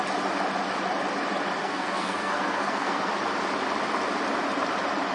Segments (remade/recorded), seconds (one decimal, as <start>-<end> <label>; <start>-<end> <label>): 0.0-1.6 recorded; 1.6-3.1 remade; 3.1-5.1 recorded